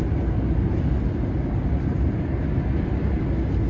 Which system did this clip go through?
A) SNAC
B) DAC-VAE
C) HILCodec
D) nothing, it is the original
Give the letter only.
D